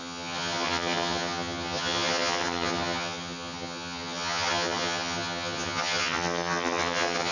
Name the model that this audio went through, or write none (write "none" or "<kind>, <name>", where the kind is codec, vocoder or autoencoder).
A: vocoder, HiFi-GAN